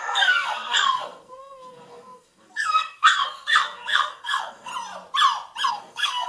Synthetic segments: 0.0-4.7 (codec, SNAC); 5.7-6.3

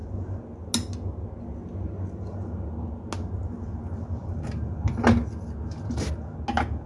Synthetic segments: none

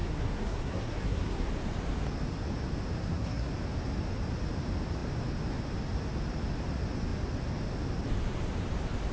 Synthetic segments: 0.0-1.5 (codec, SNAC); 3.0-3.5